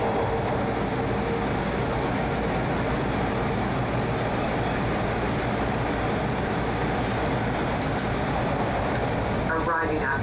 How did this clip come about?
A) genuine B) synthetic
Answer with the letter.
A